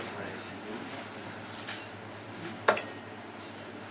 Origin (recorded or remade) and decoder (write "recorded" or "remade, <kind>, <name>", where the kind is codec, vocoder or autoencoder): recorded